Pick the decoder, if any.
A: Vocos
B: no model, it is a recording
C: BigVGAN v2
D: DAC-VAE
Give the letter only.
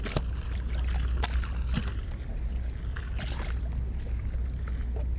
B